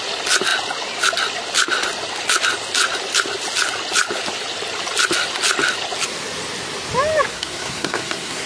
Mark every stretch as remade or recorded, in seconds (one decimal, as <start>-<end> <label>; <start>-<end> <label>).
0.0-7.3 recorded; 7.3-8.5 remade